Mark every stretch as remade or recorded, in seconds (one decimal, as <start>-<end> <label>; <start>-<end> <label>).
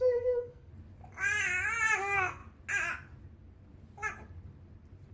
0.0-0.7 remade; 0.7-2.0 recorded; 2.0-2.4 remade; 2.4-5.1 recorded